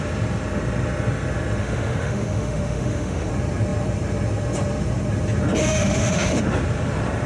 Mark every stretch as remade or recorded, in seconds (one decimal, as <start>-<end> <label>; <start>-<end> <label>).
0.0-1.6 recorded; 1.6-3.3 remade; 3.3-5.6 recorded; 5.6-6.4 remade; 6.4-7.3 recorded

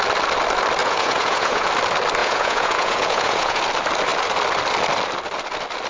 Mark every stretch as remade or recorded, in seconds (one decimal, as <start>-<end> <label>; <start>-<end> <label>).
0.0-0.8 recorded; 0.8-1.7 remade; 1.7-2.2 recorded; 2.2-3.6 remade; 3.6-5.9 recorded

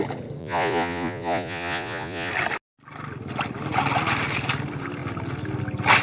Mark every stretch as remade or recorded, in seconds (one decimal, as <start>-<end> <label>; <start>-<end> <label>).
0.0-0.4 recorded; 0.4-2.3 remade; 2.3-6.0 recorded

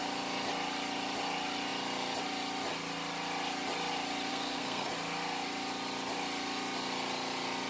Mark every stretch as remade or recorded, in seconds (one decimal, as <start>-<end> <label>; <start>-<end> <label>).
0.0-4.3 recorded; 4.3-4.9 remade; 4.9-7.7 recorded

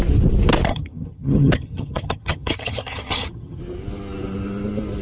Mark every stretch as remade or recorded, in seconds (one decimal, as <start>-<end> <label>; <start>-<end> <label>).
0.0-0.7 recorded; 0.7-3.6 remade; 3.6-5.0 recorded

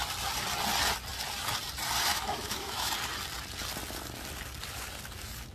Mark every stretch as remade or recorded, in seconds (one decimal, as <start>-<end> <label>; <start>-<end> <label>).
0.0-2.1 recorded; 2.1-2.9 remade; 2.9-5.5 recorded

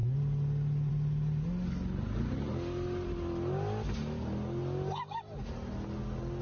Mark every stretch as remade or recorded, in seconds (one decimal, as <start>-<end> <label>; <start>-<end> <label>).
0.0-6.4 recorded

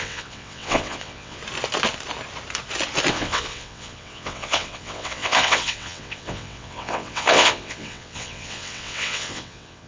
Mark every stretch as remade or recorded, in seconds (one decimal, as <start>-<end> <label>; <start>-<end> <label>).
0.0-1.4 remade; 1.4-3.1 recorded; 3.1-9.9 remade